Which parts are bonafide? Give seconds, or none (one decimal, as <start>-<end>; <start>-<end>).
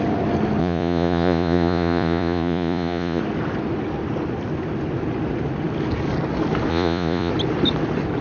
0.0-0.6; 3.2-6.7; 7.3-8.2